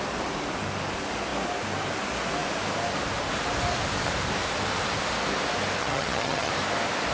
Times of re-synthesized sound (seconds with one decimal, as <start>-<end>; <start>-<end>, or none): 5.8-6.5